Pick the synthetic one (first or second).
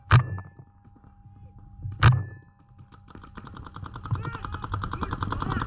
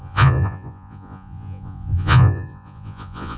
second